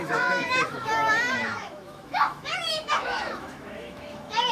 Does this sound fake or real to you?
fake